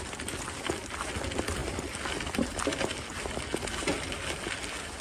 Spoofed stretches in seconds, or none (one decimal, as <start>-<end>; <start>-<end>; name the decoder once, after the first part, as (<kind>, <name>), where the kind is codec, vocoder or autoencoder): none